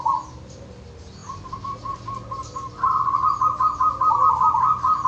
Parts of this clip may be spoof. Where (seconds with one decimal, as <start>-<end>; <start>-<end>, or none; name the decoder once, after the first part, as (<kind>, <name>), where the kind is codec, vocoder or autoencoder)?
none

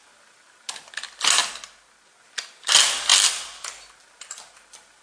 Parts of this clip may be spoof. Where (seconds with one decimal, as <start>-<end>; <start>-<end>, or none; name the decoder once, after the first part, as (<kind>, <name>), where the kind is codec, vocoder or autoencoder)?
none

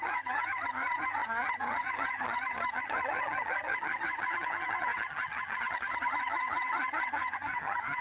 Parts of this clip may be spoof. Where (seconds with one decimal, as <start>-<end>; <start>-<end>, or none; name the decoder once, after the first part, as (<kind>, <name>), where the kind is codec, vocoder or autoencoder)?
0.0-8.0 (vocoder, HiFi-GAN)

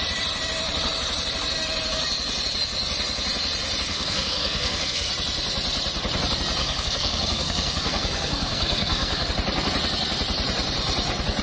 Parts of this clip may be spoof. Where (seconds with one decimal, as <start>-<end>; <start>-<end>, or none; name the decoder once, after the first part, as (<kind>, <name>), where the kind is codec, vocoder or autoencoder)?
3.9-5.1 (codec, SNAC); 6.6-9.3